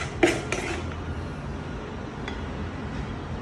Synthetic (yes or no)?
no